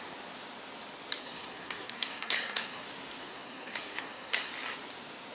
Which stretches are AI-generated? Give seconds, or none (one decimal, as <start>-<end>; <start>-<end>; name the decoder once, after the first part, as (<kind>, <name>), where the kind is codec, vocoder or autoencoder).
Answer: 1.2-2.8 (codec, SNAC); 3.2-4.5